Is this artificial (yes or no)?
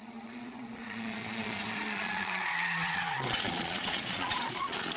yes